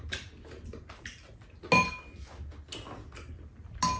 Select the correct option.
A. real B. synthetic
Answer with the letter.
A